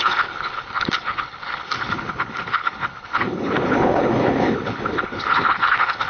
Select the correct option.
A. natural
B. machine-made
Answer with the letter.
B